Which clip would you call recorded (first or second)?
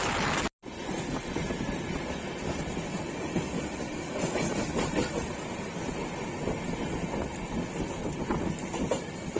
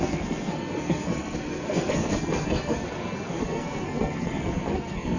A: first